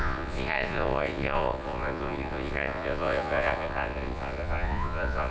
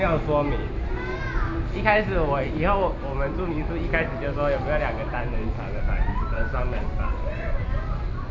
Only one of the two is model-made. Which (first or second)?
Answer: first